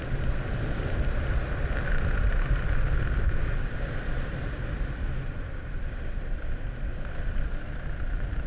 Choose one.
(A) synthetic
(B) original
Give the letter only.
B